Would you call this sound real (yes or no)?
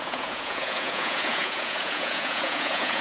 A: no